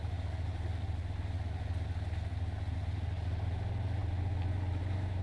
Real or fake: real